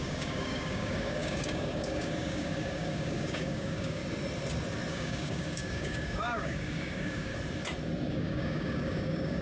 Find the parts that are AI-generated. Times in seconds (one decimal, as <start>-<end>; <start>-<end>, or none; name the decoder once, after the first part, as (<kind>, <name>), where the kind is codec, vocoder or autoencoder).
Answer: 0.0-4.0 (codec, DAC); 4.9-7.3; 8.1-9.4